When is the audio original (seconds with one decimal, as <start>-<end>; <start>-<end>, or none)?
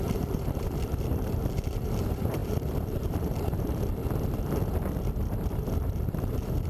4.0-6.1